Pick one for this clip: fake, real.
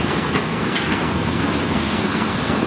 fake